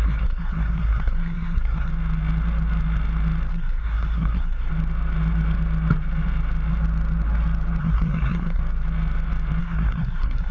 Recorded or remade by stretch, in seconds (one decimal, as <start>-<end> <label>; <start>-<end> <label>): 0.0-1.9 remade; 1.9-3.5 recorded; 3.5-4.7 remade; 4.7-7.8 recorded; 7.8-8.6 remade; 8.6-9.6 recorded; 9.6-10.5 remade